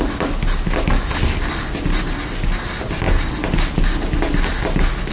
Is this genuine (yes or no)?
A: yes